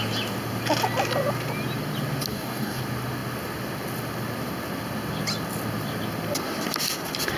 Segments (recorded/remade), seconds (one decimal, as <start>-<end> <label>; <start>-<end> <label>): 0.0-2.3 recorded; 2.3-2.8 remade; 2.8-7.4 recorded